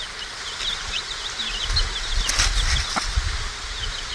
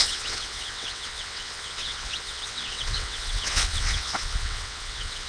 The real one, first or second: first